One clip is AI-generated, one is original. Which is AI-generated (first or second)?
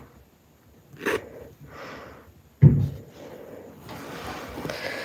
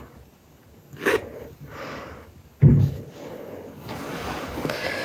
second